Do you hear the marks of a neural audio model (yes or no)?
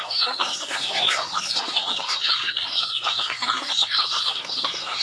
yes